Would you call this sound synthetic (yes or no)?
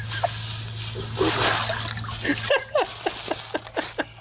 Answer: no